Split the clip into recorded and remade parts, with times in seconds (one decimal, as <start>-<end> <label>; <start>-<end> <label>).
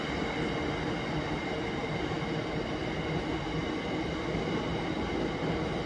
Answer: 0.0-5.9 recorded